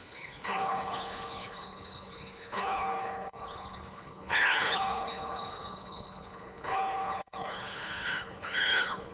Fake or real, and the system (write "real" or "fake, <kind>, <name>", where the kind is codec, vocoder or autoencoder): fake, codec, HILCodec